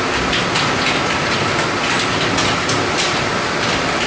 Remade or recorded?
recorded